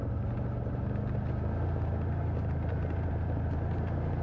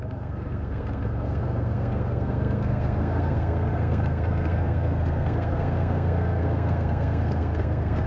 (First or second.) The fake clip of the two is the second